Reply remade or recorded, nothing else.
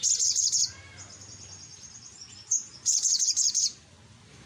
recorded